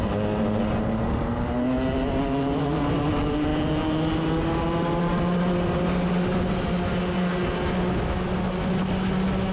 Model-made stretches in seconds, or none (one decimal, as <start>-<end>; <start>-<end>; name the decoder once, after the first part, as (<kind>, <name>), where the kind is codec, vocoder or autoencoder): none